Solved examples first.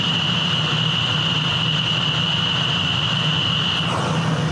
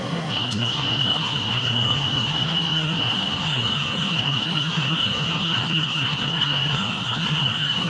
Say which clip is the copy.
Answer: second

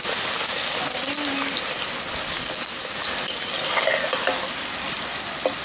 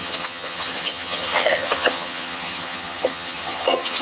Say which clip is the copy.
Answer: second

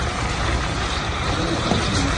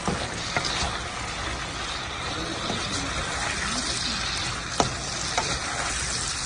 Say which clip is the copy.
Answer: first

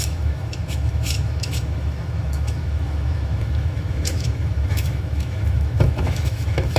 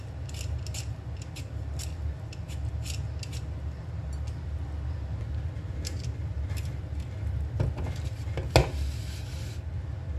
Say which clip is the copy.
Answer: first